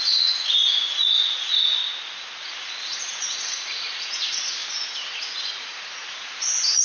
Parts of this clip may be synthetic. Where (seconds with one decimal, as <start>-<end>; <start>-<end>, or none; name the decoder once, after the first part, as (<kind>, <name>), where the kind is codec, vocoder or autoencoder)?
0.0-1.8 (vocoder, Vocos); 2.5-6.8